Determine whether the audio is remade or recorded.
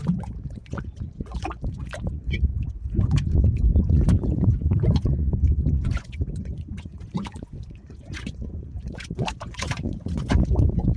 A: remade